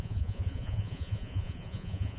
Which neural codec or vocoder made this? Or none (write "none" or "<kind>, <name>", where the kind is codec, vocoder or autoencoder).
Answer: vocoder, Vocos